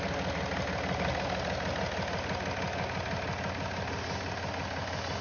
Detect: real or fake real